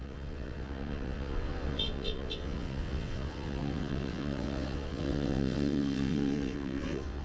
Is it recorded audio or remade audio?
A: remade